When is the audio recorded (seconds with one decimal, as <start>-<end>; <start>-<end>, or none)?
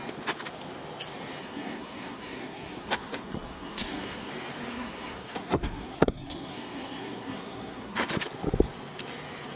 0.0-1.4; 4.3-4.7; 8.1-9.6